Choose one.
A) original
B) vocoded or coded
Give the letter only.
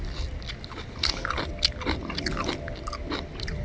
A